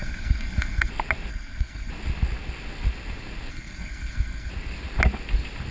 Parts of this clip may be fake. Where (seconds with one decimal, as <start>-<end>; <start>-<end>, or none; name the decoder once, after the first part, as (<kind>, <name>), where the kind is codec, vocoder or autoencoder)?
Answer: 0.0-0.9 (codec, SNAC); 1.3-1.9; 3.5-4.5